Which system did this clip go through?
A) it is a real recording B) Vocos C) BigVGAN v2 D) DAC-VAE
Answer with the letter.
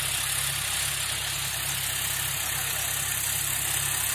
A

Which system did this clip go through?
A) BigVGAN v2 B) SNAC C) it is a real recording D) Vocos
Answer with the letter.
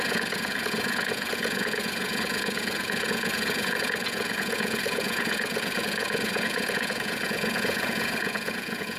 D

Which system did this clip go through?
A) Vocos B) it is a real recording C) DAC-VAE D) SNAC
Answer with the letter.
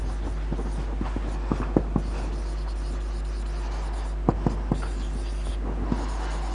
B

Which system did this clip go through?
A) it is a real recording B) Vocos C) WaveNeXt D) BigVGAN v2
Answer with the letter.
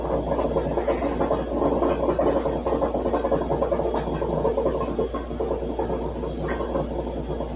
A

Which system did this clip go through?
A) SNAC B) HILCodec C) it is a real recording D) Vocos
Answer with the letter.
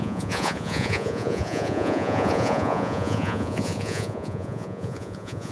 D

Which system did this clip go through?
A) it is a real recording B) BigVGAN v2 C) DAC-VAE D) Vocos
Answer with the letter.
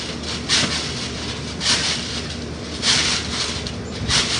A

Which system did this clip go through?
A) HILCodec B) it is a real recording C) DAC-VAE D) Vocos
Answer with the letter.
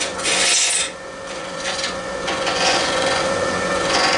D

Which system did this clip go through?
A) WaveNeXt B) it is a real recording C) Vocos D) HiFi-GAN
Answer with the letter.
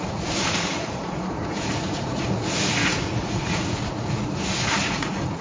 C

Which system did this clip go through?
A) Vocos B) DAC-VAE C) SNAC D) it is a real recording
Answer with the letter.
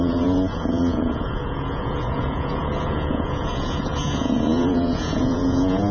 A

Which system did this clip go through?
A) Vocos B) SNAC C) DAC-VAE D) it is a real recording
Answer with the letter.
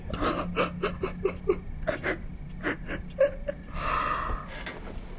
D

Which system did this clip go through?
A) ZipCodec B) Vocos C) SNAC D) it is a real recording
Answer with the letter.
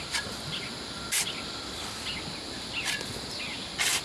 D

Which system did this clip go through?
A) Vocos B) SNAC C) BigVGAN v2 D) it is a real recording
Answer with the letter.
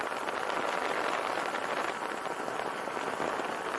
D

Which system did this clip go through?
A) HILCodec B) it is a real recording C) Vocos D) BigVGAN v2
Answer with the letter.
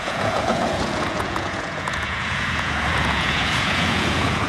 C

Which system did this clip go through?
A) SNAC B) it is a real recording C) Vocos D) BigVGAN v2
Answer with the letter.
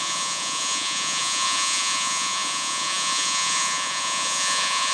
C